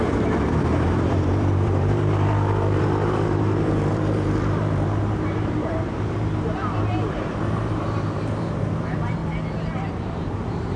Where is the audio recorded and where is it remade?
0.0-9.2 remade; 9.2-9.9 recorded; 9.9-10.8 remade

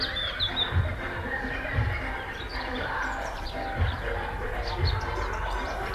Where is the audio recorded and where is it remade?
0.0-0.9 recorded; 0.9-1.8 remade; 1.8-2.5 recorded; 2.5-3.5 remade; 3.5-5.9 recorded

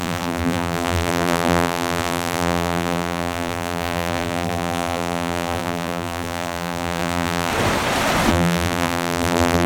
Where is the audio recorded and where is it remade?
0.0-7.5 remade; 7.5-8.3 recorded; 8.3-9.7 remade

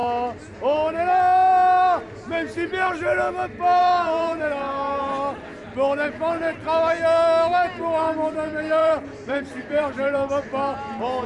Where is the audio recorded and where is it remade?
0.0-3.8 recorded; 3.8-4.4 remade; 4.4-8.8 recorded; 8.8-10.3 remade; 10.3-11.3 recorded

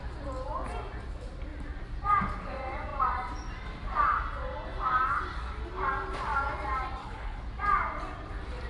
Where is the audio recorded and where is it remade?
0.0-7.0 recorded; 7.0-7.5 remade; 7.5-8.7 recorded

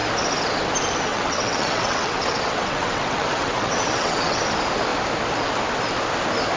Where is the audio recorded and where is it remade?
0.0-1.1 recorded; 1.1-4.4 remade; 4.4-6.6 recorded

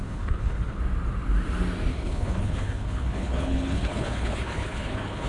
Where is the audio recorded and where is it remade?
0.0-0.8 remade; 0.8-1.9 recorded; 1.9-5.3 remade

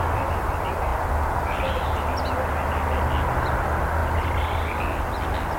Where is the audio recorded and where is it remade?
0.0-5.6 recorded